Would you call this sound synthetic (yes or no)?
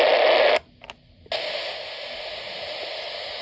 no